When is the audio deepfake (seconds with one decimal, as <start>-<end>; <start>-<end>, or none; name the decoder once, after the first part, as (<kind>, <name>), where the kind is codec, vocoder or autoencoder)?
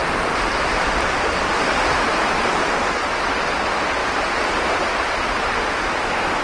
0.0-1.7 (vocoder, BigVGAN v2)